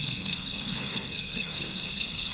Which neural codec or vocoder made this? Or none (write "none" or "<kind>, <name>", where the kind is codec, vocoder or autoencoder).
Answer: codec, SNAC